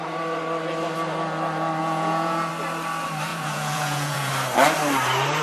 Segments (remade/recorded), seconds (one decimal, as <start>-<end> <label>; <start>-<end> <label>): 0.0-1.8 recorded; 1.8-2.5 remade; 2.5-3.3 recorded; 3.3-4.3 remade; 4.3-5.4 recorded